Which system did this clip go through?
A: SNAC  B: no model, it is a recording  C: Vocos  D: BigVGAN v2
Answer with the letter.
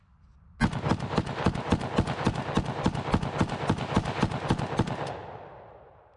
B